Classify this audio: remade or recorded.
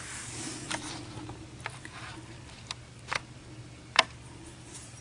recorded